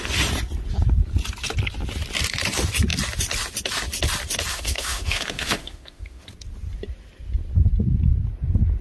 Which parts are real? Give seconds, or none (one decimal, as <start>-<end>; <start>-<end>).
0.0-4.5; 6.2-8.8